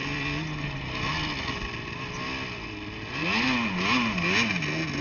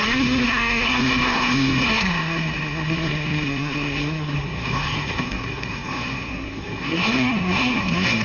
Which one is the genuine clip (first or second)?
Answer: first